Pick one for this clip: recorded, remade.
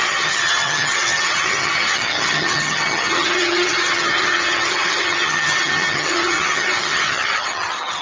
remade